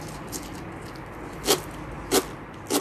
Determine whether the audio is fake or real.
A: real